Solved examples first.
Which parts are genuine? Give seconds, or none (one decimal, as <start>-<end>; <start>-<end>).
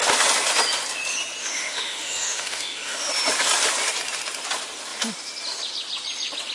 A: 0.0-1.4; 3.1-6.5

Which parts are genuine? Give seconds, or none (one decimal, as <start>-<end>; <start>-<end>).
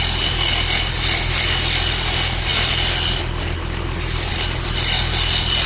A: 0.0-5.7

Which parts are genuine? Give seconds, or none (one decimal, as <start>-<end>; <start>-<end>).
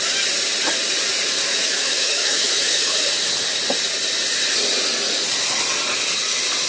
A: 0.0-1.4; 3.1-6.7